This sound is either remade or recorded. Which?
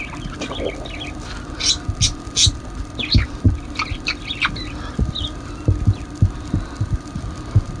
recorded